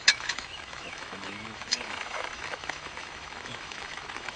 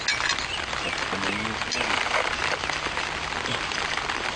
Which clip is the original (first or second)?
second